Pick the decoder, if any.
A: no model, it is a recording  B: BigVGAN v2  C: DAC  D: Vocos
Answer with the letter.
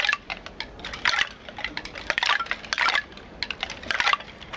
A